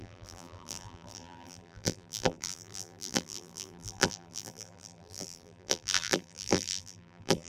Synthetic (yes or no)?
yes